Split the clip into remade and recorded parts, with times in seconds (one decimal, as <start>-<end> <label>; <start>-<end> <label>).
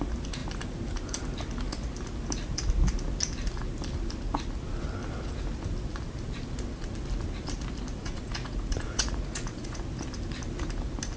0.0-7.9 recorded; 7.9-9.8 remade; 9.8-11.2 recorded